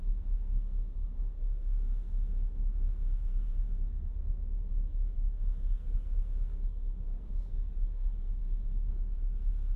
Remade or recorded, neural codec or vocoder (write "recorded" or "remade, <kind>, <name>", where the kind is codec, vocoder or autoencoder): remade, codec, SNAC